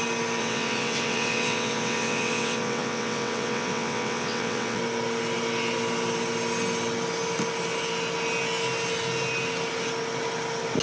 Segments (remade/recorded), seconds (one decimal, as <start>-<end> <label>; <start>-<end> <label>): 0.0-0.4 recorded; 0.4-4.8 remade; 4.8-10.8 recorded